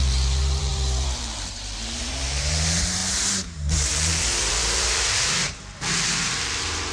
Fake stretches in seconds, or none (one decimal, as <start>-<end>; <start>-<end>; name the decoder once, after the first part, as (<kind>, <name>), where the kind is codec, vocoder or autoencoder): 0.0-6.9 (vocoder, BigVGAN v2)